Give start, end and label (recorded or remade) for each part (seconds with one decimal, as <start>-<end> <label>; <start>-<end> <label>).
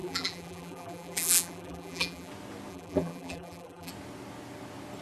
0.0-2.3 remade; 2.3-2.7 recorded; 2.7-3.9 remade; 3.9-5.0 recorded